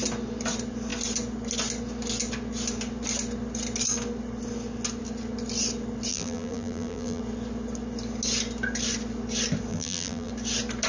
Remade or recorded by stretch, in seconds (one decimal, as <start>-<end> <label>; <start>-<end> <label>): 0.0-6.1 recorded; 6.1-7.2 remade; 7.2-9.7 recorded; 9.7-10.3 remade; 10.3-10.9 recorded